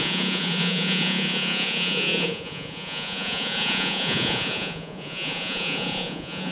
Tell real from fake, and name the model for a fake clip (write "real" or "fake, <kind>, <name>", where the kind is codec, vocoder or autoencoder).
fake, vocoder, Vocos